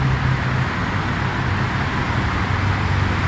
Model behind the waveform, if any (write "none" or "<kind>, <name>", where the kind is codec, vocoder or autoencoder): none